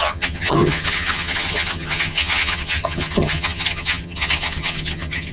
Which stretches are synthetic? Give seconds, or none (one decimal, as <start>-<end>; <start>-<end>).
0.0-5.3